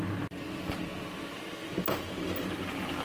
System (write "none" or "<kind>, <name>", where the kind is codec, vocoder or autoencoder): none